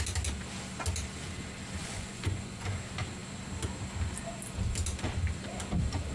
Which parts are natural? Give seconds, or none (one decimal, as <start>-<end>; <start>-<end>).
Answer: 0.0-1.8; 2.8-6.1